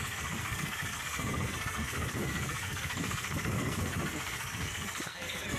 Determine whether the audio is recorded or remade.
remade